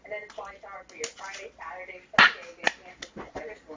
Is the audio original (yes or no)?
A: yes